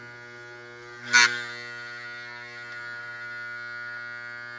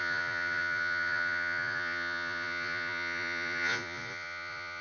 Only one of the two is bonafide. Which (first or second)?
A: first